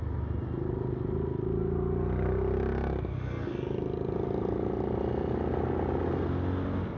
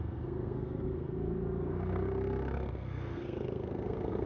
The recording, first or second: first